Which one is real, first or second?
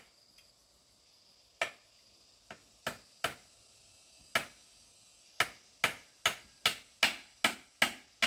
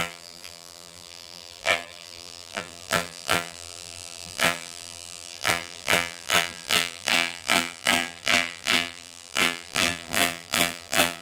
first